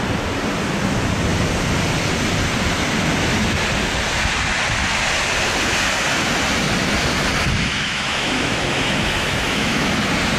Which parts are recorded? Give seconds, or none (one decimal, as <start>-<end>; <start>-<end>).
0.0-7.7; 9.9-10.4